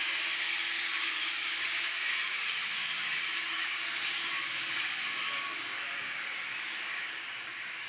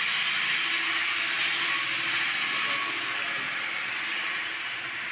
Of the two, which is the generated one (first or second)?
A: first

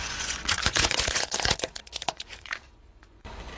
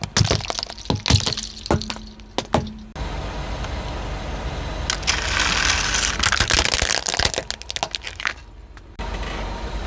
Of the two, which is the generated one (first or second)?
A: first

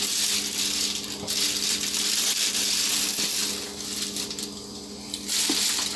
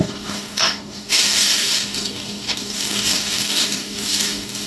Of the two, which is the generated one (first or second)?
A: second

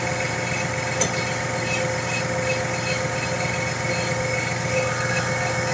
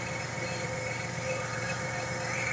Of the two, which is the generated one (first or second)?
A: second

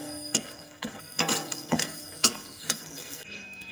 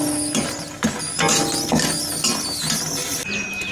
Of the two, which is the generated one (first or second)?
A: first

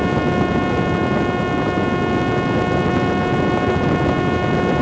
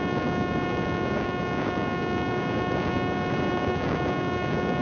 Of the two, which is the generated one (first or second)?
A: second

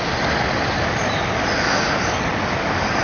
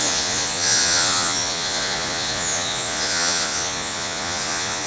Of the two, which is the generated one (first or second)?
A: second